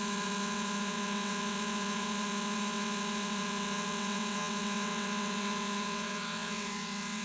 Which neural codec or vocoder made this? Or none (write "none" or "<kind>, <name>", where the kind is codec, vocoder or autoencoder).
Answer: vocoder, WaveNeXt